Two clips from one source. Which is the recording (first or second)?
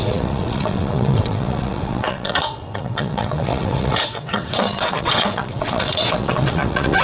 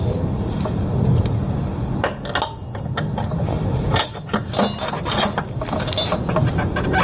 second